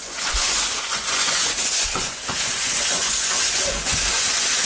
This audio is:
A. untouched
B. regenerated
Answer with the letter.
B